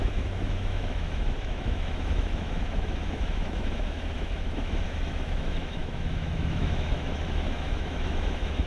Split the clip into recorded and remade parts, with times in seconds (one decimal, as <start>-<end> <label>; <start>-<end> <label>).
0.0-8.7 remade